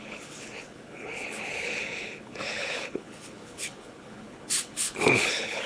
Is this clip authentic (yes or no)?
no